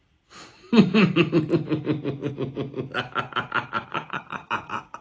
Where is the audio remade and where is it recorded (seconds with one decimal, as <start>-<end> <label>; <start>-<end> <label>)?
0.0-3.9 recorded; 3.9-4.5 remade; 4.5-5.0 recorded